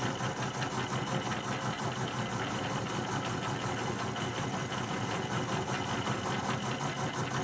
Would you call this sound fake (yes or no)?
no